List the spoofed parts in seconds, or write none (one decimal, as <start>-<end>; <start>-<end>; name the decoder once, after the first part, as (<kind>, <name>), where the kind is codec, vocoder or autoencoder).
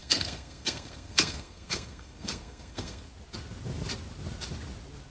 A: 0.0-3.1 (codec, SNAC)